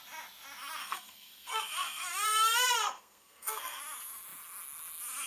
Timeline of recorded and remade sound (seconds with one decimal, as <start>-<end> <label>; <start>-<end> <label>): 0.0-0.8 recorded; 0.8-3.8 remade; 3.8-5.3 recorded